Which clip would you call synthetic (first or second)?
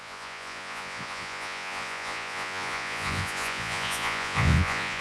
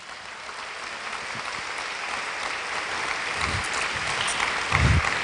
first